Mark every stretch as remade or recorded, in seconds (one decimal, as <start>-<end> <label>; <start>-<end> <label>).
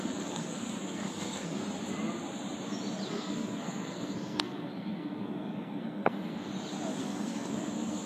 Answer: 0.0-1.6 remade; 1.6-3.1 recorded; 3.1-6.5 remade; 6.5-7.0 recorded; 7.0-8.1 remade